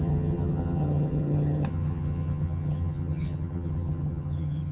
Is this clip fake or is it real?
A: fake